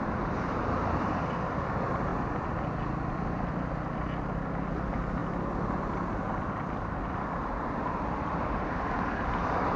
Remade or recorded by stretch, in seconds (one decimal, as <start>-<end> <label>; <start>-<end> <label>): 0.0-2.1 remade; 2.1-4.7 recorded; 4.7-5.2 remade; 5.2-6.3 recorded; 6.3-9.8 remade